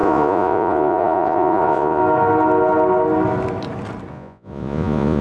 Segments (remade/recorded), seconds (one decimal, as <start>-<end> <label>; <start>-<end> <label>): 0.0-2.0 remade; 2.0-4.1 recorded; 4.1-5.2 remade